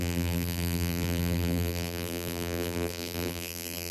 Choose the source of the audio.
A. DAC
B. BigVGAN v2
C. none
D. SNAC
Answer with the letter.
B